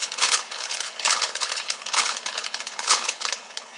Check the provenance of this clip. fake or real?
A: fake